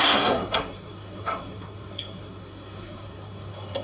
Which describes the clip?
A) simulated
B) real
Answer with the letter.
A